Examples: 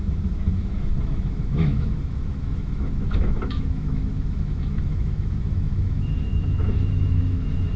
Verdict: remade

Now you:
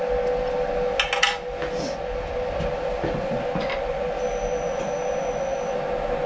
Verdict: recorded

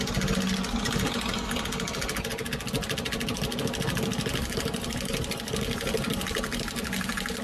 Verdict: recorded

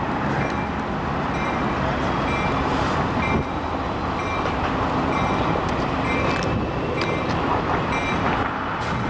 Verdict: recorded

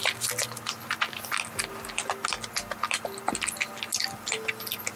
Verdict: recorded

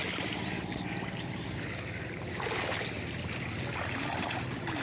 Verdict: recorded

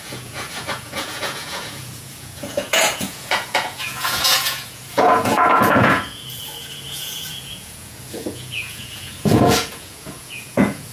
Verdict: remade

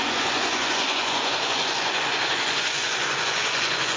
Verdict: remade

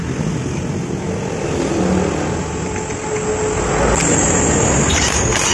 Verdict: recorded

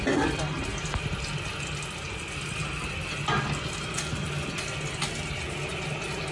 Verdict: recorded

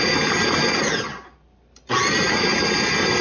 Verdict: recorded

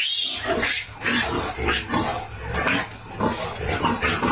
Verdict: recorded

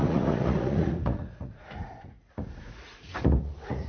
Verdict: remade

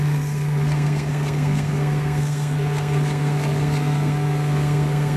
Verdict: remade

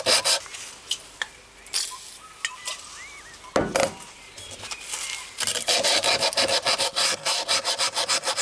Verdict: recorded